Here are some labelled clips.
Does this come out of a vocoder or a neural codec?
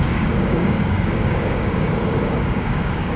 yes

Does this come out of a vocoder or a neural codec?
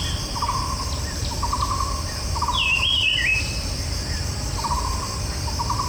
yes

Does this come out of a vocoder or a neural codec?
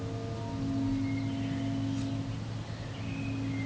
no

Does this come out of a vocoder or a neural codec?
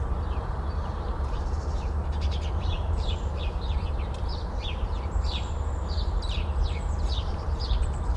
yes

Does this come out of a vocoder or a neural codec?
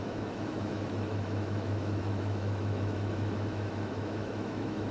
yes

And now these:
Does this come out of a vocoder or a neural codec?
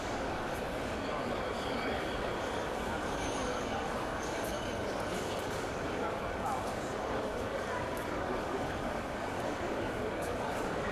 yes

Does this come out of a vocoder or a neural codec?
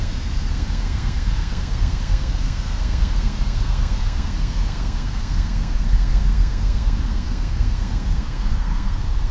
yes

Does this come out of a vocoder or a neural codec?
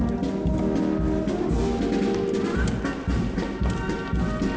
no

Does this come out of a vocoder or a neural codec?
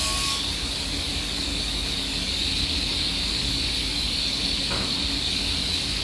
yes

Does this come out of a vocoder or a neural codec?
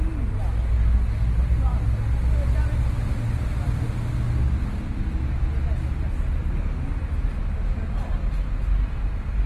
no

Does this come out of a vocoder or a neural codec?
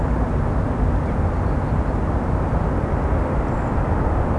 no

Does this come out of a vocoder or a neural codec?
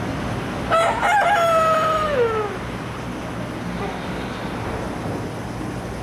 no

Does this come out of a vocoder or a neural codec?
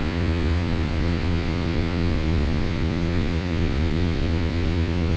yes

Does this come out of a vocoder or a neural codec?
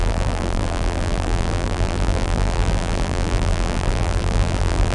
yes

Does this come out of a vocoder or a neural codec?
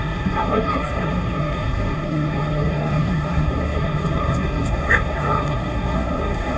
yes